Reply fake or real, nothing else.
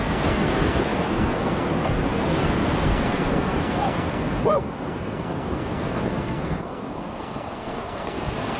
fake